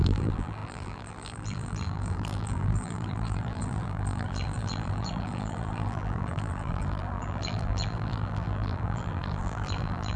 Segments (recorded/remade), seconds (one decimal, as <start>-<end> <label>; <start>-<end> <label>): 0.0-10.2 remade